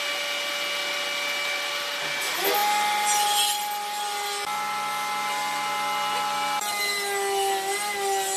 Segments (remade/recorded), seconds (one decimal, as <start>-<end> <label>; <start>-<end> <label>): 0.0-8.4 recorded